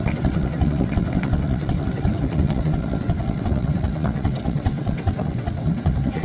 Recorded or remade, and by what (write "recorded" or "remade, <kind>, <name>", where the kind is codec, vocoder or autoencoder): remade, vocoder, WaveNeXt